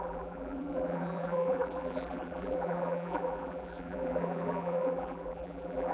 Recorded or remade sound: remade